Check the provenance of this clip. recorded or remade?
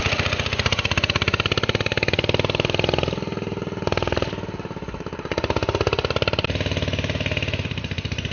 recorded